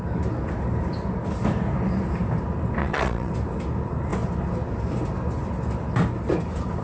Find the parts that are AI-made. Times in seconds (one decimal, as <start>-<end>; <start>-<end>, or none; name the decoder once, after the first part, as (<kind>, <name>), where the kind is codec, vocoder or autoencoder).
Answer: 2.8-3.3 (vocoder, WaveNeXt)